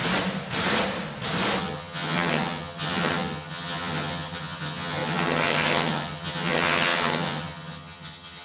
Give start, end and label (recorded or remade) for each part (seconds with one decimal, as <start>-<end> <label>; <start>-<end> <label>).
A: 0.0-1.6 recorded; 1.6-8.4 remade